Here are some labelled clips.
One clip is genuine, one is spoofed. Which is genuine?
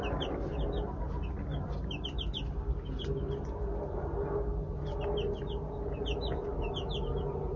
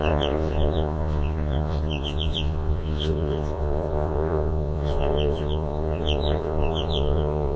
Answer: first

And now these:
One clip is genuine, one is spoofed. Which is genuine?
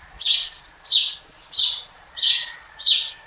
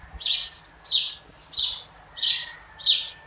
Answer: second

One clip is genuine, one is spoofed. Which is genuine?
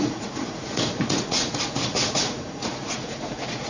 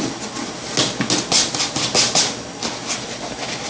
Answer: second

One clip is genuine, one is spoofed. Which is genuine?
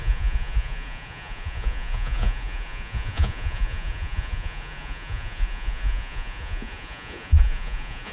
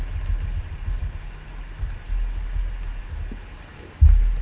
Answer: second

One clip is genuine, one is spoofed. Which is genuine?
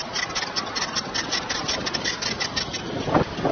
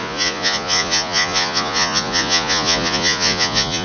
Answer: first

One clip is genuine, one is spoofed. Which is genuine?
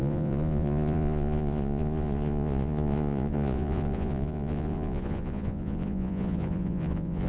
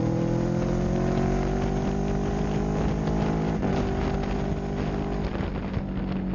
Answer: second